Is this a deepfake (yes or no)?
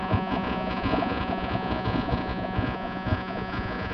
yes